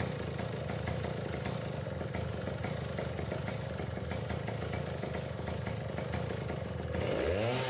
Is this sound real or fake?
real